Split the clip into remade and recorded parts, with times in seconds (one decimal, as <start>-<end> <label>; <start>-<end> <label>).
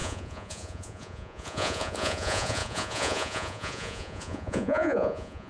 0.0-5.5 remade